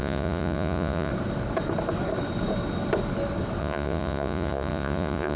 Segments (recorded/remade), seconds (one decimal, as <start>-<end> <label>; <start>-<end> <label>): 0.0-1.1 remade; 1.1-3.6 recorded; 3.6-5.4 remade